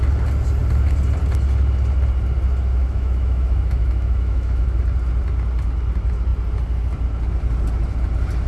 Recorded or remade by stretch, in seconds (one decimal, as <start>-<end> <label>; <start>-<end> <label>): 0.0-2.7 recorded; 2.7-4.8 remade; 4.8-8.5 recorded